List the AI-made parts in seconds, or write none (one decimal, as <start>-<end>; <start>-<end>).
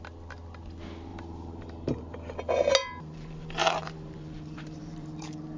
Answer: 1.1-2.2; 2.8-5.6